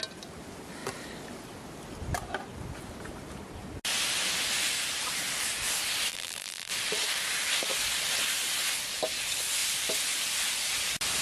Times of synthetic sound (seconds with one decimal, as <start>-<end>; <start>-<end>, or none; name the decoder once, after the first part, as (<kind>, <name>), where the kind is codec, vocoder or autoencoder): 6.1-6.7 (vocoder, BigVGAN v2)